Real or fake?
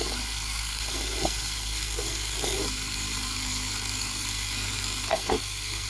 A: fake